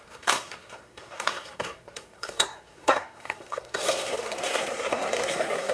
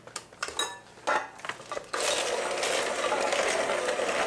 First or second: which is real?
second